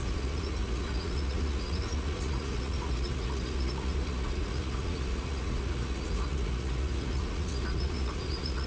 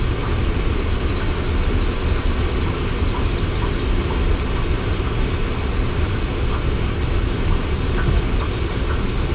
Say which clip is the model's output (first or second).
first